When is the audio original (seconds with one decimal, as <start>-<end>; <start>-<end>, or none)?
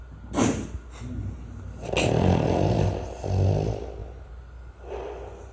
0.0-5.5